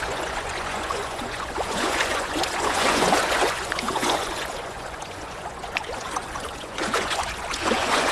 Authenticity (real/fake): fake